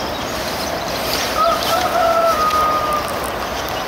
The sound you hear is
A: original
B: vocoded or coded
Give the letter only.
A